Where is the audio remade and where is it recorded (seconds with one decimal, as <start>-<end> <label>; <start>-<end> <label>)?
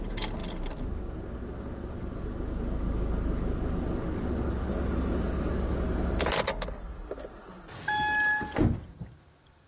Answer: 0.0-9.7 recorded